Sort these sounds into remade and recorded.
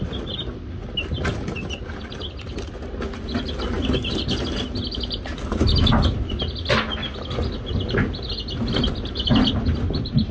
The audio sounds recorded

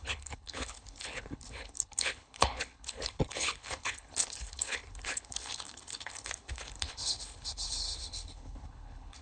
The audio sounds remade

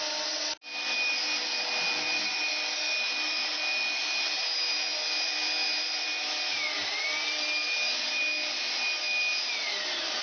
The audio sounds recorded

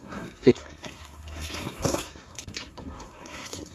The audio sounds remade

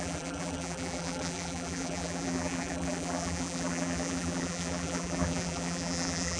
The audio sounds remade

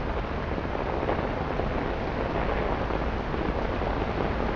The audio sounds recorded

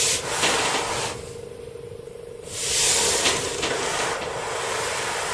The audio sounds recorded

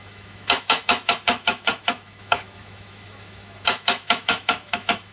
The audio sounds remade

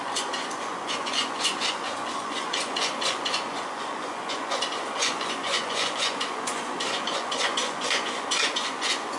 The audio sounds remade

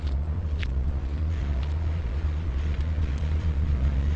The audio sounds remade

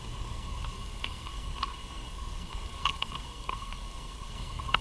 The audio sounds remade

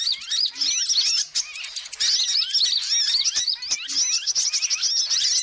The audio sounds recorded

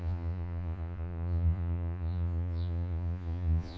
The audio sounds remade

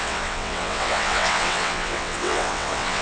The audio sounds remade